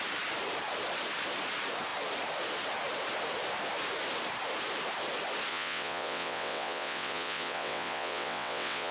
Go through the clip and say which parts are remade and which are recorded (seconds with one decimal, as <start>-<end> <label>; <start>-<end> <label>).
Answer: 0.0-5.5 recorded; 5.5-8.9 remade